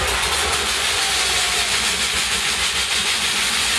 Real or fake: fake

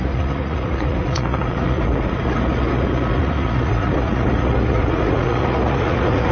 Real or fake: fake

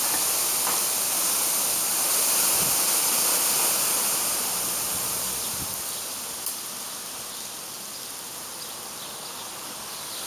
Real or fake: real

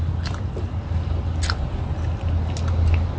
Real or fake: real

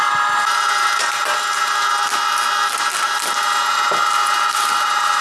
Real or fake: real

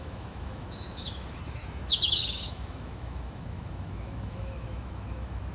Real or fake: fake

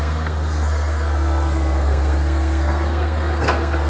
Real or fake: fake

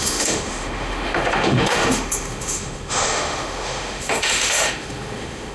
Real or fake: fake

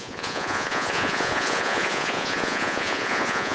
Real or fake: fake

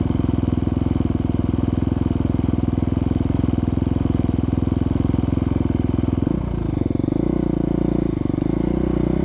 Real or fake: real